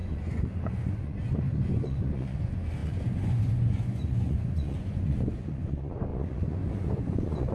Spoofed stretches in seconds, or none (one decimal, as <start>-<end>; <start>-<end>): 0.0-7.5